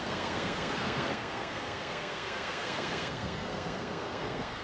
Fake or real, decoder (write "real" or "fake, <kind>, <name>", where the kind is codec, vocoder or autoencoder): fake, codec, SNAC